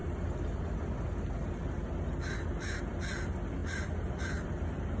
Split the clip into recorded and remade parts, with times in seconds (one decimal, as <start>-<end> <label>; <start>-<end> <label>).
0.0-2.8 recorded; 2.8-5.0 remade